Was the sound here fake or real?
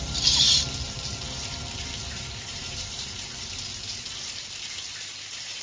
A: fake